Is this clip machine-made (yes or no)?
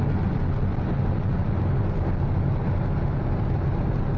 no